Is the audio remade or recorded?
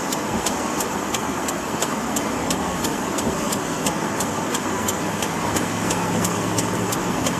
remade